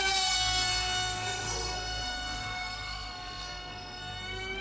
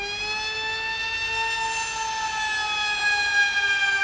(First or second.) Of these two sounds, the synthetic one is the first